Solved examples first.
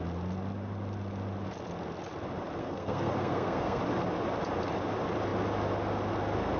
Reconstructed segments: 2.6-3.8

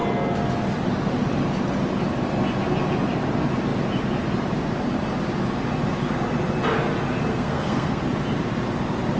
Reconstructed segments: 7.3-8.0

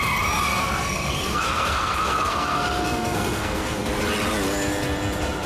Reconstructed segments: 0.6-3.9

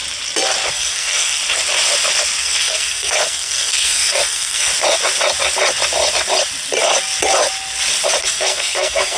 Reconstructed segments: 0.7-1.4; 2.4-4.7; 8.2-9.2

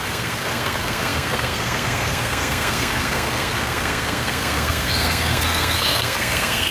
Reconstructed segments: 0.0-6.7

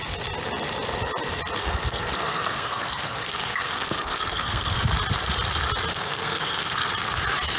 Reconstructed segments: 1.6-4.8; 5.9-6.9

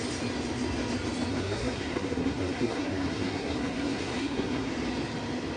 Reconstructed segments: 1.3-4.7